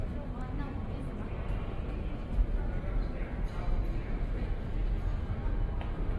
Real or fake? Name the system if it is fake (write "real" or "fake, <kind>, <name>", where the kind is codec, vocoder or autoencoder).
real